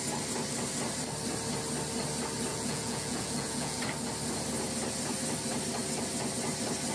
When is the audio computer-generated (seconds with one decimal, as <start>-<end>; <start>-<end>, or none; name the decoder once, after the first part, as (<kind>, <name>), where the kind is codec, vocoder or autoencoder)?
2.5-3.8 (vocoder, Vocos)